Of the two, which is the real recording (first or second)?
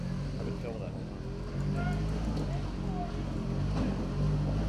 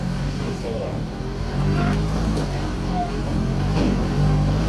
first